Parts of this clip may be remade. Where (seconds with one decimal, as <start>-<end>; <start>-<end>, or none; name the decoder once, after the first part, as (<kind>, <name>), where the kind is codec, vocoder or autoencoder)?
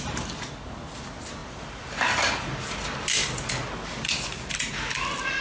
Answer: 1.4-2.4 (vocoder, BigVGAN v2)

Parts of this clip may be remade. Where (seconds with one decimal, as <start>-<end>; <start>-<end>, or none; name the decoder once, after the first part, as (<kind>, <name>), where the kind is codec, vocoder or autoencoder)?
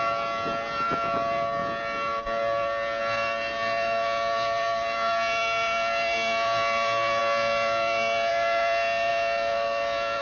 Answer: none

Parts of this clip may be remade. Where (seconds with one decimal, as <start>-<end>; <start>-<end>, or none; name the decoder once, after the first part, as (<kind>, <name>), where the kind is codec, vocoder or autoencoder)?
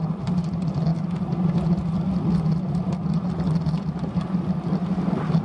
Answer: none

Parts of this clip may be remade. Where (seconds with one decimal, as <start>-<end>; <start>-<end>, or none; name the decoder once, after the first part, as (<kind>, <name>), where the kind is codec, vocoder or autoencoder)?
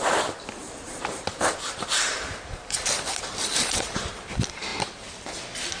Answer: 0.6-4.1 (vocoder, BigVGAN v2)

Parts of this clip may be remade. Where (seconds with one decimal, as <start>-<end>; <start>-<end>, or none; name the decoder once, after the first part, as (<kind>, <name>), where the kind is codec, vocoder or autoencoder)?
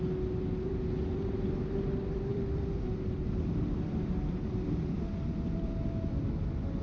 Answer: 2.3-6.8 (vocoder, BigVGAN v2)